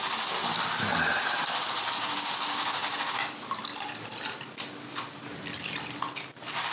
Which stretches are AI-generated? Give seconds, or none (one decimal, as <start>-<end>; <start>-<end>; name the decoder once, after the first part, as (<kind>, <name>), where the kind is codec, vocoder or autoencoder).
none